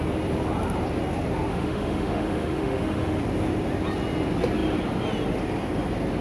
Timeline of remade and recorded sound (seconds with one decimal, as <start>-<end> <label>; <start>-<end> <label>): 0.0-1.5 recorded; 1.5-3.2 remade; 3.2-6.2 recorded

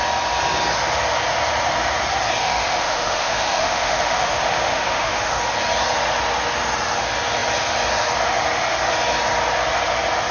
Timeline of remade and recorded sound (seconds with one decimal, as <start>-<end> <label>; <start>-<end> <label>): 0.0-2.4 recorded; 2.4-5.4 remade; 5.4-10.3 recorded

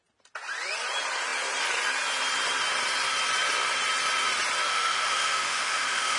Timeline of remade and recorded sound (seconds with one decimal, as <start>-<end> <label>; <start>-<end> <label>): 0.0-4.7 recorded; 4.7-6.2 remade

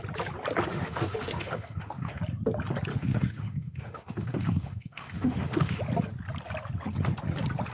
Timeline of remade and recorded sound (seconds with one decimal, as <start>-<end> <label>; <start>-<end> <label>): 0.0-0.7 recorded; 0.7-2.2 remade; 2.2-2.9 recorded; 2.9-5.8 remade; 5.8-7.7 recorded

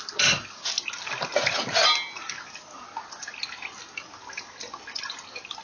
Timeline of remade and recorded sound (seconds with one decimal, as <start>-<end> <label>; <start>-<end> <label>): 0.0-5.6 recorded